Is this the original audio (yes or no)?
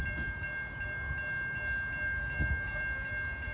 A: yes